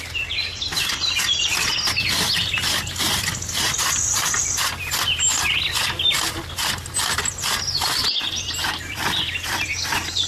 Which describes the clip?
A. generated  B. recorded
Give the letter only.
B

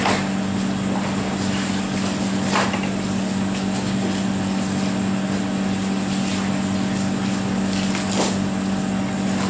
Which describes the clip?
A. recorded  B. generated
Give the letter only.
A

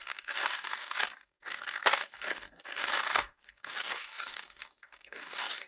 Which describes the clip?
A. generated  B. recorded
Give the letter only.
A